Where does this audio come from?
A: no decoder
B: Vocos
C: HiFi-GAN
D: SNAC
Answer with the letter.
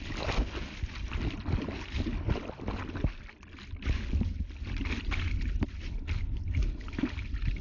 A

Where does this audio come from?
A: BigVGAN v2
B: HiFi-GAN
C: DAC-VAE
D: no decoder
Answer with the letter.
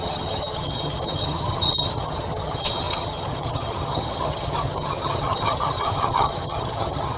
B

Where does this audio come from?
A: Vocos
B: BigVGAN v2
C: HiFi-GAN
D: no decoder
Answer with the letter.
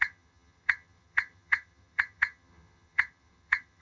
C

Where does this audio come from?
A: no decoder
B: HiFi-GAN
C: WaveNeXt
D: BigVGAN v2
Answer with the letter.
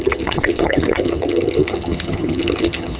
B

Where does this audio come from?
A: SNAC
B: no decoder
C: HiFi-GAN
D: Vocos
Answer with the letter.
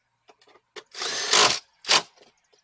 B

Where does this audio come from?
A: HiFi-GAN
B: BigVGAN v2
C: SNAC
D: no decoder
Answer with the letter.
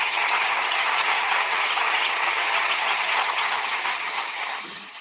A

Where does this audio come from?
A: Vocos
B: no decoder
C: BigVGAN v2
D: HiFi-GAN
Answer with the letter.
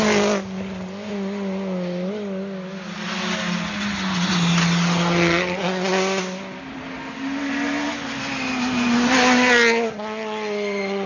B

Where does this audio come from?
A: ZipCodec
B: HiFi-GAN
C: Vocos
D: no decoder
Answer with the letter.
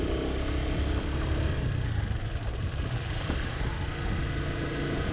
D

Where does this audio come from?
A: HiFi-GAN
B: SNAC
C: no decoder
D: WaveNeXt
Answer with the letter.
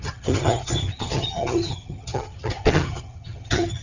A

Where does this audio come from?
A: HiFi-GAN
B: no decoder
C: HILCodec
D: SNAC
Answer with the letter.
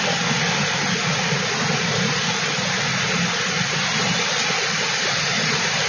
B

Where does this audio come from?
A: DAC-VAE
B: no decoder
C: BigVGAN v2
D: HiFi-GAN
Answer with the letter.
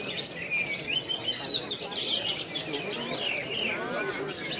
B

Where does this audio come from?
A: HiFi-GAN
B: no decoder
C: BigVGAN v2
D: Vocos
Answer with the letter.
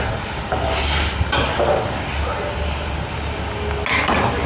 B